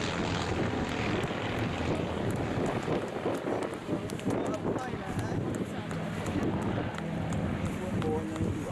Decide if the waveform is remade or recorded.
recorded